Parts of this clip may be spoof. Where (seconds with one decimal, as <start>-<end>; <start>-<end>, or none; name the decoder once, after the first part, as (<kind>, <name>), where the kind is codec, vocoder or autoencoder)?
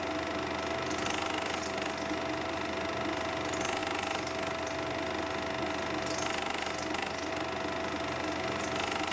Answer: none